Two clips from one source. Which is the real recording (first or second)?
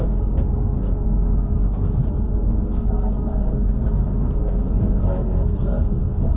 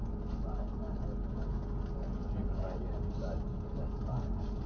second